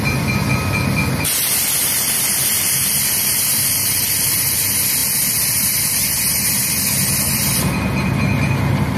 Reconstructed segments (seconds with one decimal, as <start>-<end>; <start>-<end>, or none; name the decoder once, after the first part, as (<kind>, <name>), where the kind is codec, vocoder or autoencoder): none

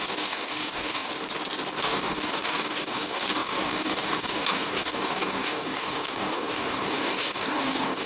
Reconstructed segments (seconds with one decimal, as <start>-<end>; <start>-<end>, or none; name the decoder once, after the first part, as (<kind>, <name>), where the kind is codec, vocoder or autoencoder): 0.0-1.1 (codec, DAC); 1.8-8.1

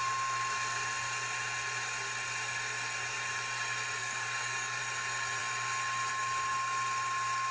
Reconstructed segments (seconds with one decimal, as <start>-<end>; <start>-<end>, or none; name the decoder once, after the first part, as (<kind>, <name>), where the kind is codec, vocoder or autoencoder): 4.0-4.8 (codec, DAC)